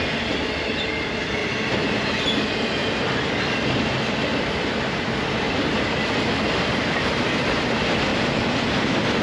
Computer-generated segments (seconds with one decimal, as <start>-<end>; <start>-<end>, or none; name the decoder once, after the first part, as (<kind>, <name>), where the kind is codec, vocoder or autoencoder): 2.8-7.7 (vocoder, BigVGAN v2); 8.1-9.2